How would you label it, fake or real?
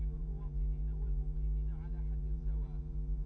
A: fake